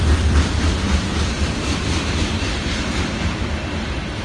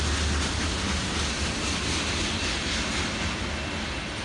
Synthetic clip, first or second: first